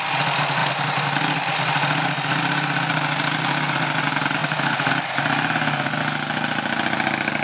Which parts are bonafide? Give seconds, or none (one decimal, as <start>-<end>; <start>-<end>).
0.0-4.4; 4.9-7.4